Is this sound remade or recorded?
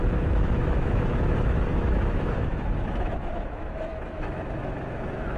remade